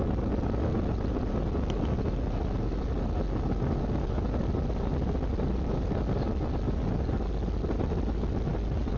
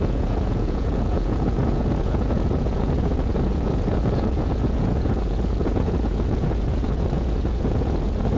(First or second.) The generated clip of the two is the second